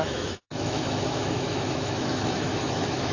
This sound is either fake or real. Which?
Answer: fake